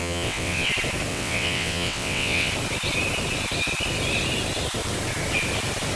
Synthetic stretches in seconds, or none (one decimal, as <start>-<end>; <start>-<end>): 0.0-0.7; 1.1-2.5